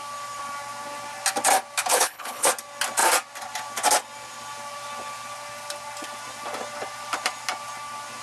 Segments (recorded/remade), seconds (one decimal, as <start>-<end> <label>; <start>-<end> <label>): 0.0-1.9 recorded; 1.9-2.5 remade; 2.5-8.2 recorded